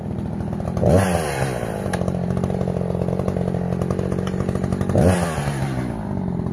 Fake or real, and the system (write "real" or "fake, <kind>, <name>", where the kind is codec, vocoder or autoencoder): real